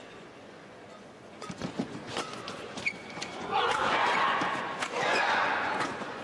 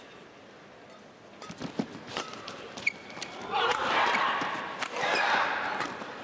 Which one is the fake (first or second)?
first